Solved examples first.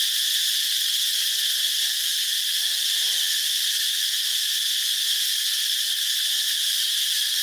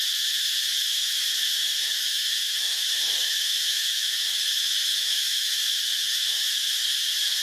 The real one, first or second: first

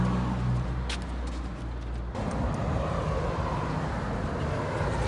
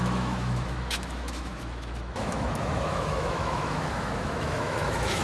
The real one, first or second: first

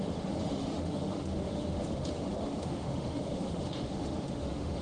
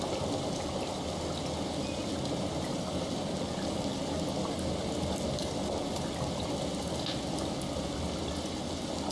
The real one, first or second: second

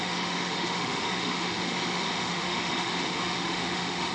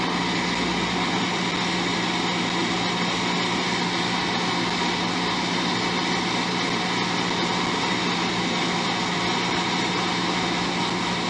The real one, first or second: second